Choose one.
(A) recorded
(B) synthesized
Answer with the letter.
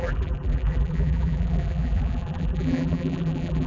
B